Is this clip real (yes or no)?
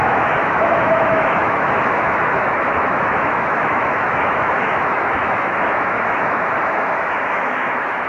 no